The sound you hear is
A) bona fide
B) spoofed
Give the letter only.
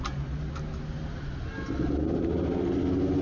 A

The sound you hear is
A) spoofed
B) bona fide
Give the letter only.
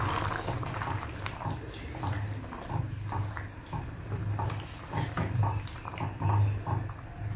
B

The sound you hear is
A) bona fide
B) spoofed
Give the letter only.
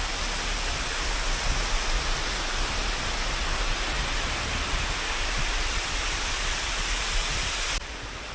A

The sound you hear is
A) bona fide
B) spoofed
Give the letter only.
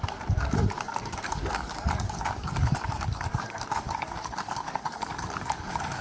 B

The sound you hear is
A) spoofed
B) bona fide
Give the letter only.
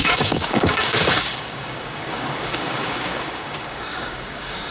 A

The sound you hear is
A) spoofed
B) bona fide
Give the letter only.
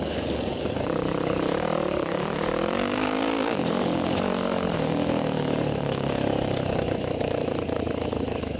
A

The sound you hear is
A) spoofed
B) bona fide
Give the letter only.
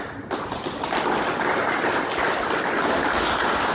B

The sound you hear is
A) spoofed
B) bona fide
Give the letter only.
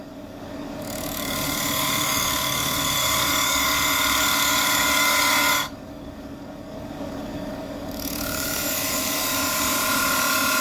A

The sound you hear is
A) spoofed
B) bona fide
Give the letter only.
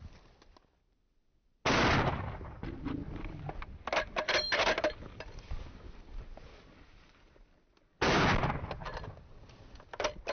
B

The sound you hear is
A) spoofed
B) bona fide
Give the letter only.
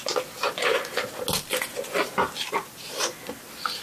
B